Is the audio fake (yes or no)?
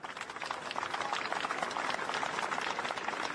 no